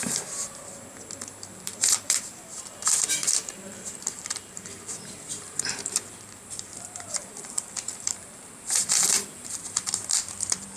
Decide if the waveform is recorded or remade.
remade